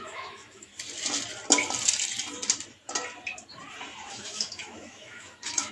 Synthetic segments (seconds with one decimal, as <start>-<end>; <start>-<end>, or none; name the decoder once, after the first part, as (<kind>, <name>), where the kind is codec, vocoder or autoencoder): 0.0-0.7 (autoencoder, DAC-VAE); 4.1-5.7